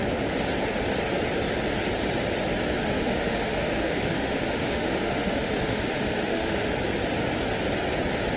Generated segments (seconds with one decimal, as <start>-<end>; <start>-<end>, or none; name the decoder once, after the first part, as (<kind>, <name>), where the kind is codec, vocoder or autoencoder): 2.8-6.8 (autoencoder, DAC-VAE)